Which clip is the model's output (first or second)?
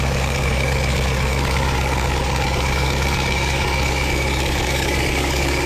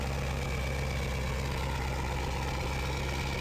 first